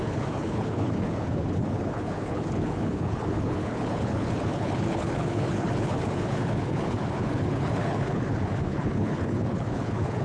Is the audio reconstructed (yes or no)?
yes